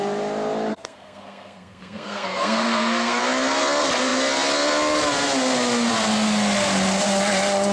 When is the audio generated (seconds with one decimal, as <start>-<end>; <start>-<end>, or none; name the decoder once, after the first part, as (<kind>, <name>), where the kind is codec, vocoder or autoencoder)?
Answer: 0.7-3.2 (codec, SNAC)